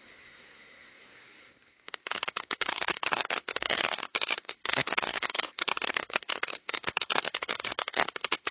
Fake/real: fake